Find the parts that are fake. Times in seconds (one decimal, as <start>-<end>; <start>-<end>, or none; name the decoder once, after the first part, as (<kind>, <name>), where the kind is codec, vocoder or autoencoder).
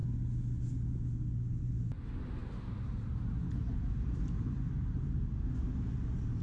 2.4-5.3 (vocoder, BigVGAN v2)